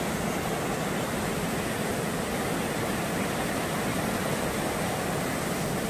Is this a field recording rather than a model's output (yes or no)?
yes